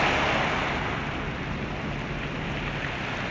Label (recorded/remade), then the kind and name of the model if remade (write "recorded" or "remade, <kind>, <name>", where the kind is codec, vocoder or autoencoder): recorded